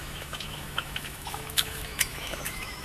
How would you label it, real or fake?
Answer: fake